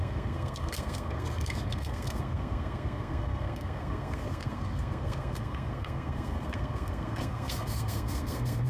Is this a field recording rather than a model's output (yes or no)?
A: no